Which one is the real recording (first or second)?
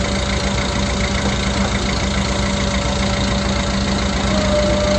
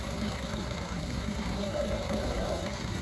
first